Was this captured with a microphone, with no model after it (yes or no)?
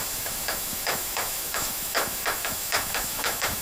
no